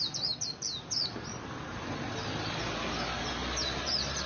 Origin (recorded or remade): recorded